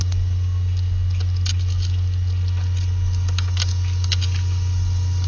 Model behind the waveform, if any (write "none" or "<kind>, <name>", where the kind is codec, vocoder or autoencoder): none